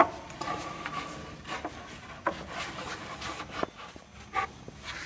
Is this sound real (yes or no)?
yes